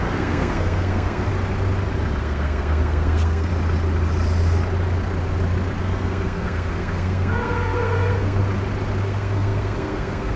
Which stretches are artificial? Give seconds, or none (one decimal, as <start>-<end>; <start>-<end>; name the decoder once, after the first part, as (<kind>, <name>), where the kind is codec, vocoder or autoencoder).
0.0-1.3 (codec, SNAC); 2.2-3.5; 5.8-8.4; 9.0-10.4